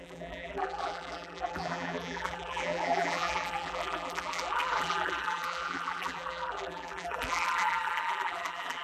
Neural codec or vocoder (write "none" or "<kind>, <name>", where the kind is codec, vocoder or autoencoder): vocoder, BigVGAN v2